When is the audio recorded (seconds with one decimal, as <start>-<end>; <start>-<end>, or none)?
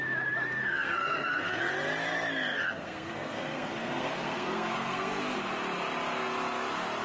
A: 0.0-0.6; 1.6-2.5; 5.2-7.0